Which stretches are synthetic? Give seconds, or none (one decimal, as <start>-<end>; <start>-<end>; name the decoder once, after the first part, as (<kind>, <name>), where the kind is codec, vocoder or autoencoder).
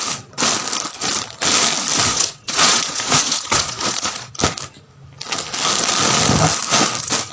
2.1-4.3 (vocoder, Vocos)